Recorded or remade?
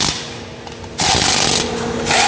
recorded